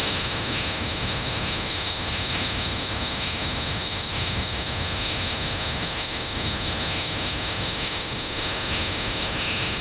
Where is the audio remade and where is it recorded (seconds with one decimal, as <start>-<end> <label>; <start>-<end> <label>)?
0.0-9.8 remade